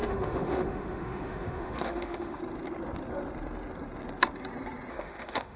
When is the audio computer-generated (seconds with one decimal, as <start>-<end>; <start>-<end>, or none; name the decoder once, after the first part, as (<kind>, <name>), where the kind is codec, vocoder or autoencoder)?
0.0-2.4 (autoencoder, DAC-VAE); 4.9-5.6